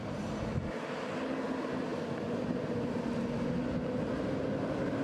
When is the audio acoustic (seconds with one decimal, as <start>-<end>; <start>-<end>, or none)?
0.7-5.0